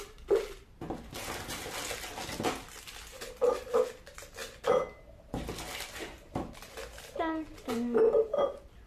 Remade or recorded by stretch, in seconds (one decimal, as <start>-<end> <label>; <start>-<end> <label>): 0.0-8.9 recorded